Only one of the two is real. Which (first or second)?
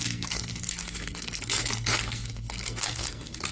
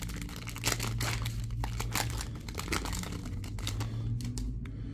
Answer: second